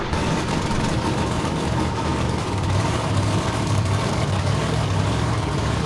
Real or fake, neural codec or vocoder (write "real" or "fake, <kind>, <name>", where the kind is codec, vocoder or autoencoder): fake, codec, DAC